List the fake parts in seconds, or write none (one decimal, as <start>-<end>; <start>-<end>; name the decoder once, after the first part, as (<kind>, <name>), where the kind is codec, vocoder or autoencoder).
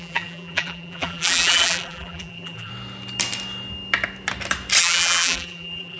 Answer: 0.0-2.7 (vocoder, BigVGAN v2); 4.8-6.0